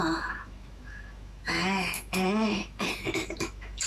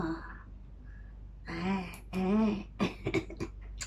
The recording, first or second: second